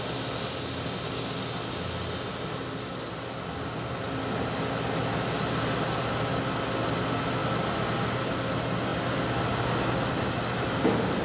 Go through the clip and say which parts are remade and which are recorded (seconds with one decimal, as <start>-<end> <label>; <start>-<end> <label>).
0.0-11.2 recorded